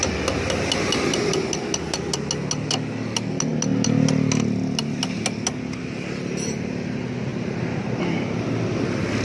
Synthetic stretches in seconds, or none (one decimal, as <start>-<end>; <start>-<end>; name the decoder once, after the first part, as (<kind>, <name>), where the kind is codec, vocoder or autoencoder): none